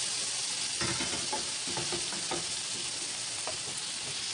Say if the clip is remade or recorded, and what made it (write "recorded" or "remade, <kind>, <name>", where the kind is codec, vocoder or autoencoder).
recorded